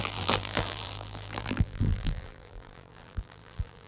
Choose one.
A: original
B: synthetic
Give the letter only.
B